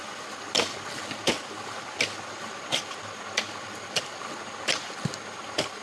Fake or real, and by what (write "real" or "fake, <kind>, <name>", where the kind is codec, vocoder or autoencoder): real